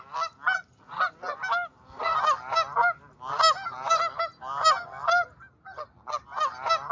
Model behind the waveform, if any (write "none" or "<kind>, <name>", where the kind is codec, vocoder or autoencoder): none